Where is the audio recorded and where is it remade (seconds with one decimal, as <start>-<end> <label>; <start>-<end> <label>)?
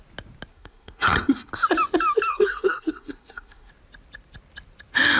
0.0-0.5 recorded; 0.5-1.5 remade; 1.5-2.3 recorded; 2.3-3.7 remade; 3.7-5.2 recorded